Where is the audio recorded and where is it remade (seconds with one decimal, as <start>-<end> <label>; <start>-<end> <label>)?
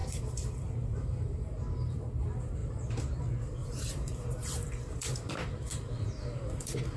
0.0-1.5 remade; 1.5-2.6 recorded; 2.6-3.2 remade; 3.2-3.6 recorded; 3.6-7.0 remade